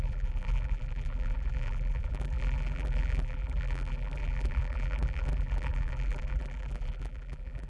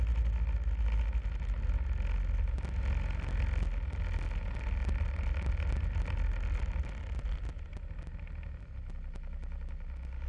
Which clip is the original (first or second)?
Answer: second